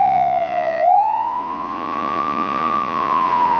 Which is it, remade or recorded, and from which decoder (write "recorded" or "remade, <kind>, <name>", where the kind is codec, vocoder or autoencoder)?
remade, vocoder, Vocos